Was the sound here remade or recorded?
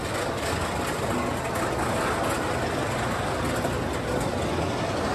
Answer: recorded